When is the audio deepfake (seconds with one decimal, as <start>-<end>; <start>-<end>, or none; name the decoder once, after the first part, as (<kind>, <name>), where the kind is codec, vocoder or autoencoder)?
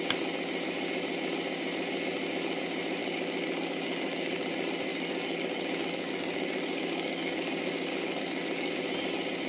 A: 3.0-4.5 (codec, DAC); 4.9-8.8